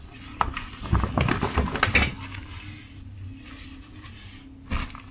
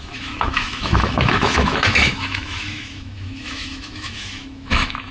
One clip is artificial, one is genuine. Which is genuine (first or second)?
first